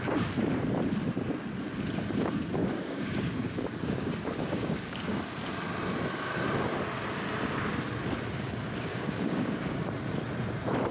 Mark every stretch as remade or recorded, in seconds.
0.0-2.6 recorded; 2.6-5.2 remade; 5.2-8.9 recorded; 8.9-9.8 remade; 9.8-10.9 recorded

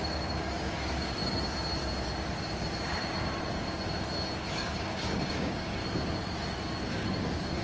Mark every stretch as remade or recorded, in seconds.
0.0-1.2 remade; 1.2-4.5 recorded; 4.5-5.8 remade; 5.8-6.9 recorded; 6.9-7.6 remade

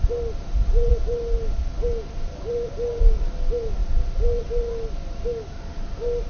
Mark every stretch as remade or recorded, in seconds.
0.0-6.3 recorded

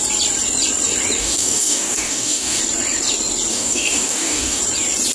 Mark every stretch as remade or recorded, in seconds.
0.0-1.2 recorded; 1.2-2.6 remade; 2.6-3.5 recorded; 3.5-4.6 remade; 4.6-5.1 recorded

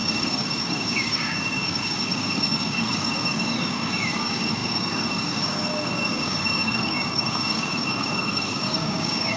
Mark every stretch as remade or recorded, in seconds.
0.0-9.4 remade

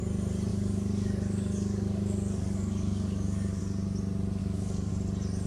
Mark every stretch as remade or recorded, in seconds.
0.0-0.5 recorded; 0.5-3.6 remade; 3.6-4.4 recorded; 4.4-4.9 remade; 4.9-5.5 recorded